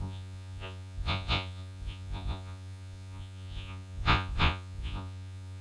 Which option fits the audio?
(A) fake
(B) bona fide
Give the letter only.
A